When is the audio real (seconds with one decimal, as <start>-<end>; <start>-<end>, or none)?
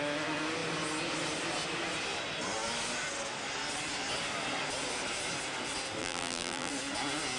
0.0-6.0; 6.7-7.4